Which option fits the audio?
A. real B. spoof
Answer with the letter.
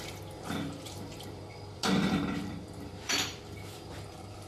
B